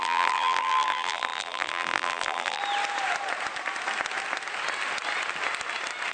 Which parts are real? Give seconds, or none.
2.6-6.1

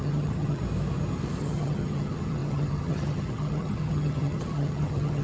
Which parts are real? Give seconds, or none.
0.6-1.4

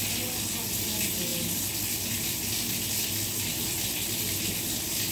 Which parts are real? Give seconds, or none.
0.0-5.1

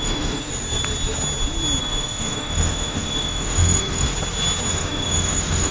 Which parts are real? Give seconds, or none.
0.5-1.8; 4.1-4.7

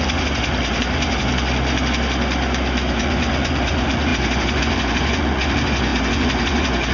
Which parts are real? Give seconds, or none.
1.3-2.9